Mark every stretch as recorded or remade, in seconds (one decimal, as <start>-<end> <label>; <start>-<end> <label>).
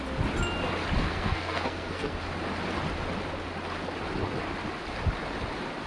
0.0-1.0 recorded; 1.0-2.2 remade; 2.2-5.9 recorded